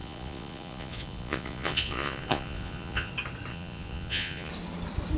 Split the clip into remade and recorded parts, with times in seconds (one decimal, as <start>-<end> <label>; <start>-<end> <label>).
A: 0.0-3.1 remade; 3.1-3.5 recorded; 3.5-4.5 remade; 4.5-5.2 recorded